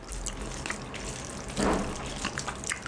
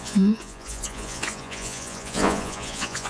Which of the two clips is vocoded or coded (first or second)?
second